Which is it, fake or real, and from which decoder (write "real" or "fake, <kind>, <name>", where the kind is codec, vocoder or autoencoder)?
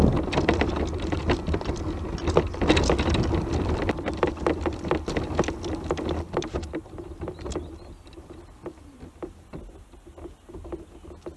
real